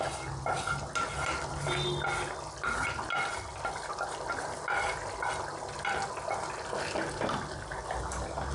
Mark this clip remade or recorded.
recorded